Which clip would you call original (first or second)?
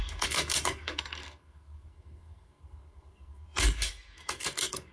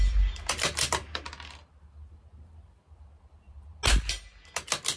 second